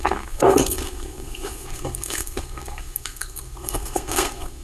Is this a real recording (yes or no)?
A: no